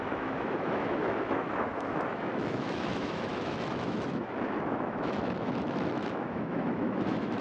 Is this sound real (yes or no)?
no